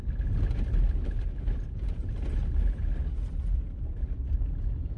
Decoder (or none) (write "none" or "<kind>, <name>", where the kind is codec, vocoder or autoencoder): none